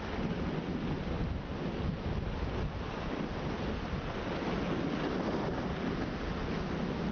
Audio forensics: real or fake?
real